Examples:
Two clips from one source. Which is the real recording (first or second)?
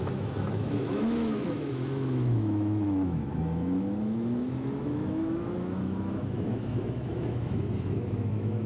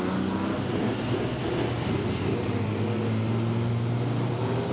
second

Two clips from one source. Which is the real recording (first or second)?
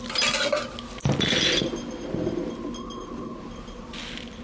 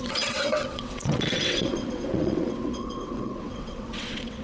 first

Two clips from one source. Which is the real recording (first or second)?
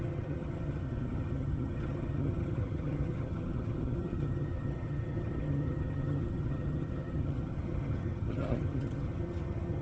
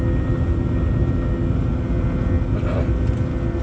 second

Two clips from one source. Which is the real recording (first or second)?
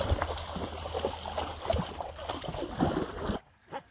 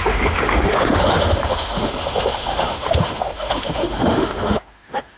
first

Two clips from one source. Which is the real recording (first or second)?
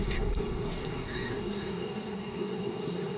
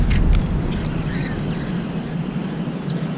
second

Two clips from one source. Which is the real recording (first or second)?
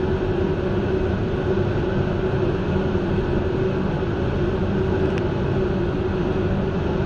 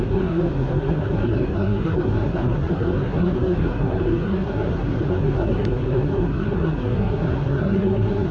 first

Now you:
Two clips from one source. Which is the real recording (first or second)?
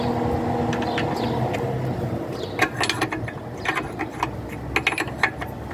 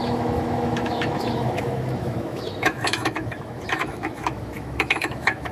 first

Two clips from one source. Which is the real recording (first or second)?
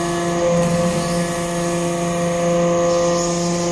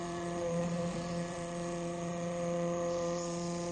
first